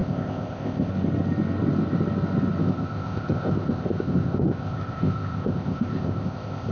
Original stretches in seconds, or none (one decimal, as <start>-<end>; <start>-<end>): 0.9-2.6